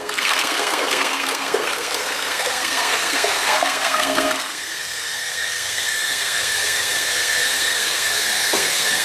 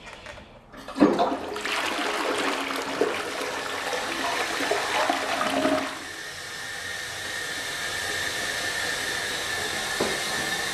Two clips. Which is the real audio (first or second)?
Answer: second